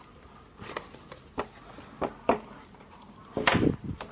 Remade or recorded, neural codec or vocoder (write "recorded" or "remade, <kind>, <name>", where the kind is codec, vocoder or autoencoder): recorded